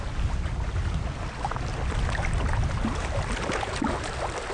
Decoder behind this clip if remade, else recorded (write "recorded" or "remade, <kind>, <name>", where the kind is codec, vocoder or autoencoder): recorded